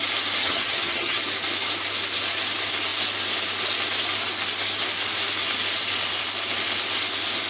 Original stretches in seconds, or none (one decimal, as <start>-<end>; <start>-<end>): 0.0-0.4; 1.2-7.5